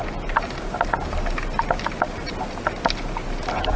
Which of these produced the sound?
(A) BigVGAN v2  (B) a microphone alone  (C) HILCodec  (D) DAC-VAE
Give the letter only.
B